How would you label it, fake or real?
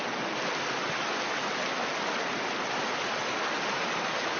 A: real